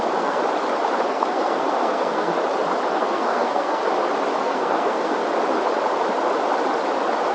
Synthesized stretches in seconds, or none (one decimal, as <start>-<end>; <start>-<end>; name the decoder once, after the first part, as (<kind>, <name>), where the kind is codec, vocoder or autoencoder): 0.0-0.4 (codec, SNAC); 1.1-2.3; 2.9-3.8; 4.4-5.2